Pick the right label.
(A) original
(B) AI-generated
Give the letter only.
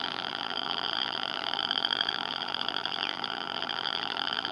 B